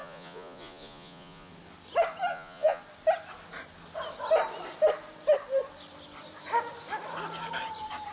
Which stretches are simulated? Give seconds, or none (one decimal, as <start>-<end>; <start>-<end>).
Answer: 0.0-1.5; 2.3-2.8